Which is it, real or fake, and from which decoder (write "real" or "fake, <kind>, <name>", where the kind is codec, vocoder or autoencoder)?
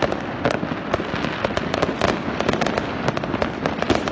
real